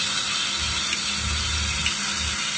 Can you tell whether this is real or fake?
real